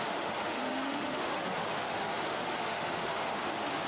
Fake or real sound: fake